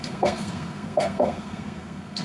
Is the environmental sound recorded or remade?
remade